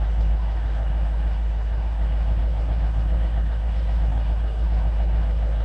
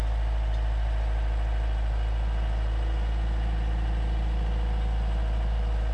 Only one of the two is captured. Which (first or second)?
second